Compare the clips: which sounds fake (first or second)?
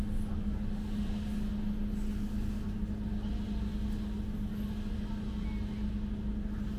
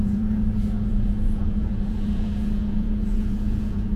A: second